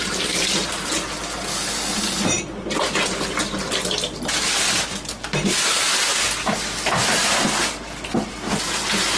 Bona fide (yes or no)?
yes